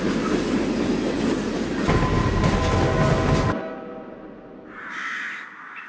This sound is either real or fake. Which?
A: real